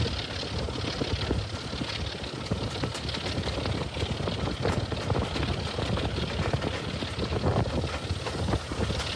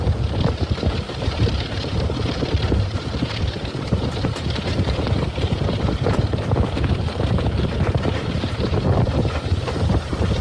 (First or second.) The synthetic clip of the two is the second